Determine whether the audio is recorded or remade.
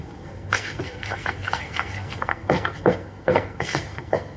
remade